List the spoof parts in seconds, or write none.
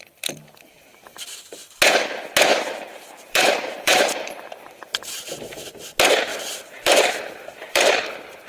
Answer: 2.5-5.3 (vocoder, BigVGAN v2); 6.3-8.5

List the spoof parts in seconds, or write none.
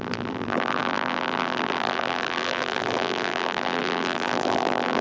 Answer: 0.0-5.0 (vocoder, BigVGAN v2)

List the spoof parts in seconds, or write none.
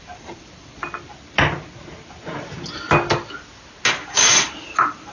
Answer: 0.0-0.8 (vocoder, BigVGAN v2); 3.9-5.1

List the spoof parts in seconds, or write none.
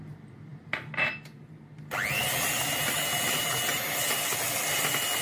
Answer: none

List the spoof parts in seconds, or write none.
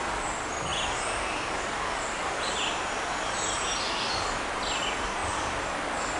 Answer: 0.7-4.4 (vocoder, BigVGAN v2)